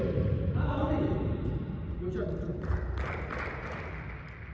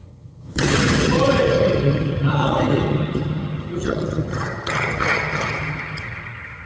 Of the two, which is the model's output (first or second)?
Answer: second